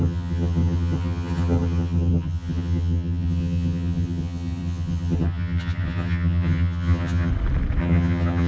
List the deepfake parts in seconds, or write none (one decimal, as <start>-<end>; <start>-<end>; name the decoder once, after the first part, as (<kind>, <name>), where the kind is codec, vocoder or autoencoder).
0.0-7.3 (vocoder, HiFi-GAN); 7.8-8.5